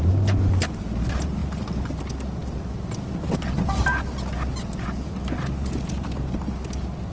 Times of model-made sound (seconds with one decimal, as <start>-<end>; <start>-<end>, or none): none